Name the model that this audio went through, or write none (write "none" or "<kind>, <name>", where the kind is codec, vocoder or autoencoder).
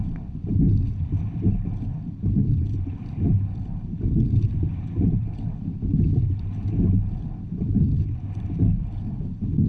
none